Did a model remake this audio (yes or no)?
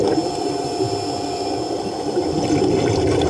no